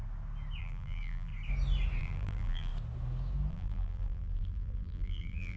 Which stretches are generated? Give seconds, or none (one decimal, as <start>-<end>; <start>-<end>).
0.6-1.3; 2.0-2.7; 3.5-5.6